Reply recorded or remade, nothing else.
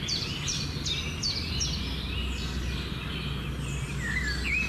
recorded